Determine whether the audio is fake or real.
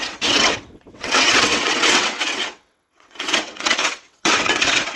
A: fake